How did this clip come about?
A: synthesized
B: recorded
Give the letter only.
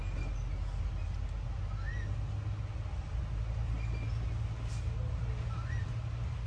B